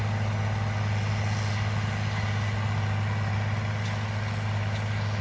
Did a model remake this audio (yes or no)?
no